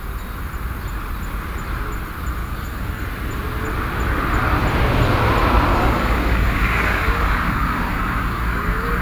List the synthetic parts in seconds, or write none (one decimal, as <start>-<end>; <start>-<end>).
2.4-3.0; 5.7-9.0